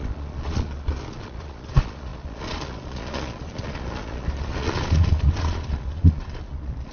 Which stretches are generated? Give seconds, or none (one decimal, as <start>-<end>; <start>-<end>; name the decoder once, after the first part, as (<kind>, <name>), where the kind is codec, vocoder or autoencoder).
0.0-6.9 (vocoder, Vocos)

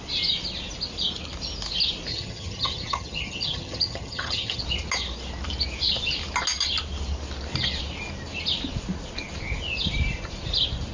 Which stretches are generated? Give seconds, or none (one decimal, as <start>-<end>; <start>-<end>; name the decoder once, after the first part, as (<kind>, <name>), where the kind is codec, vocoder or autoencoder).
2.1-4.6 (vocoder, HiFi-GAN)

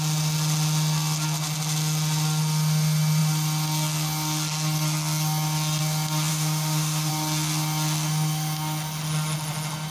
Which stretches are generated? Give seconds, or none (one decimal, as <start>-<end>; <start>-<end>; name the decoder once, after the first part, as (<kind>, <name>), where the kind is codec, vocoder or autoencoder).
6.3-7.1 (autoencoder, DAC-VAE)

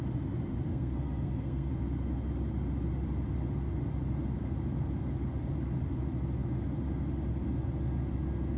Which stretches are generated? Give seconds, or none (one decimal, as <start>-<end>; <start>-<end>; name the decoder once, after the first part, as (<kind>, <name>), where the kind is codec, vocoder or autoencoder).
0.7-1.7 (codec, SNAC)

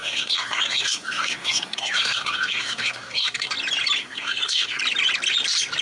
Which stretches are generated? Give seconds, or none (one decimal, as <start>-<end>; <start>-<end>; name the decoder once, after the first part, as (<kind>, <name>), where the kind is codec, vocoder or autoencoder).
0.0-3.5 (codec, SNAC); 4.0-4.8

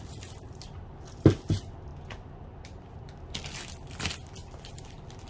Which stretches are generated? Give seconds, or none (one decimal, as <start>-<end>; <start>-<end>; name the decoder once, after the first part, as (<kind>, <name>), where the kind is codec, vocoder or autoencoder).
none

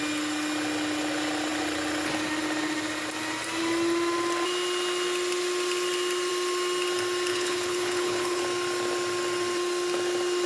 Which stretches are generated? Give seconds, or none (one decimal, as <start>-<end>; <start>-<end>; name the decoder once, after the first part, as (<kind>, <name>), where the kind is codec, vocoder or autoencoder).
7.3-8.4 (codec, HILCodec)